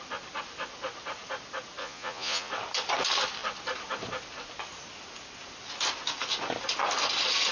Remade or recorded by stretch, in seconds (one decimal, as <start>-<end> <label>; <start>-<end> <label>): 0.0-1.8 recorded; 1.8-2.5 remade; 2.5-7.5 recorded